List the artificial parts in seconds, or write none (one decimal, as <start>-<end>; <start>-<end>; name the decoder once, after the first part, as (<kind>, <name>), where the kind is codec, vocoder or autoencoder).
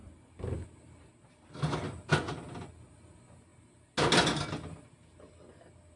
none